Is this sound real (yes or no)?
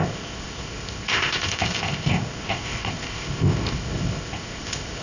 no